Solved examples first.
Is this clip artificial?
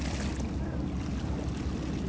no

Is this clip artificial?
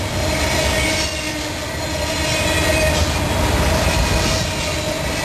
no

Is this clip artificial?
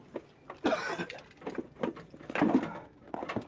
no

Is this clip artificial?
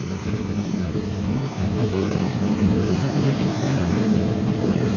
yes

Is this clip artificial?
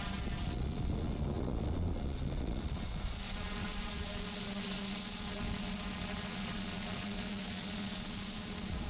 yes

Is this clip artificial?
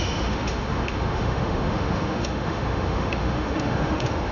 yes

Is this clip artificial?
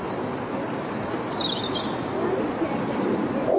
no